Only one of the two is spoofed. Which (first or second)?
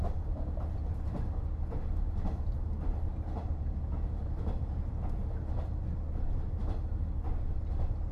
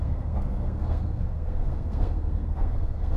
second